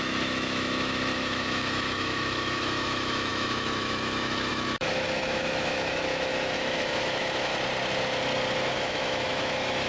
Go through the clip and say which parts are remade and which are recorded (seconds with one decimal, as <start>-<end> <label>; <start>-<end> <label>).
0.0-7.5 remade; 7.5-8.7 recorded; 8.7-9.9 remade